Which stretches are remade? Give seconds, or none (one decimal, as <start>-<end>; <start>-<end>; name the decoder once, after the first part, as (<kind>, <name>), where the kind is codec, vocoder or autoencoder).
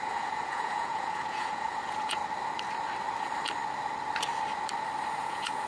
0.0-2.2 (vocoder, Vocos); 5.1-5.7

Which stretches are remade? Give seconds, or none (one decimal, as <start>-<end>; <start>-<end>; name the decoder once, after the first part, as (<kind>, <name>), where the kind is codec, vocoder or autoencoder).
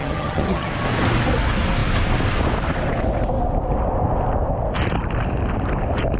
0.0-0.7 (vocoder, HiFi-GAN)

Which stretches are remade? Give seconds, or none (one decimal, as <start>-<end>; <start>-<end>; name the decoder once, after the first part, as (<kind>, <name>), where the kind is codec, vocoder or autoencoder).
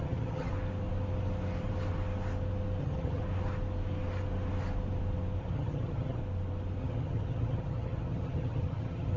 0.0-0.5 (vocoder, HiFi-GAN); 2.8-3.2; 5.4-6.2; 6.8-9.2